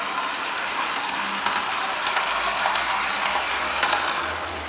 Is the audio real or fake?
real